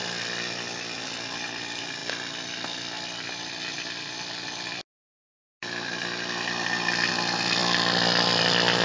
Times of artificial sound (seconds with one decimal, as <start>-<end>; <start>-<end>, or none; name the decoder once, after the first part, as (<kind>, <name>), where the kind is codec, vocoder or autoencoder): none